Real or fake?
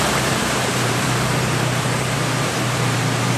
fake